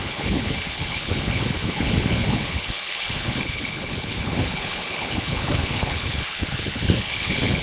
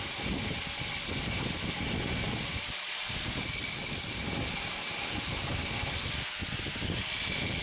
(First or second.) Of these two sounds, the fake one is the first